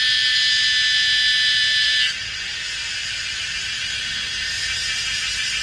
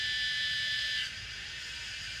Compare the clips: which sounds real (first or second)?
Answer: first